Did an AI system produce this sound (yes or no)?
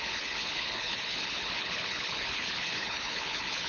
yes